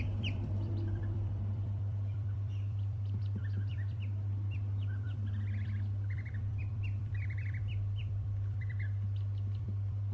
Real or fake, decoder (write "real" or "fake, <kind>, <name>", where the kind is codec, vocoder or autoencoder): fake, vocoder, BigVGAN v2